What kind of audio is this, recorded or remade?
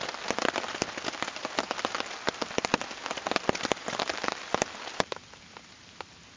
recorded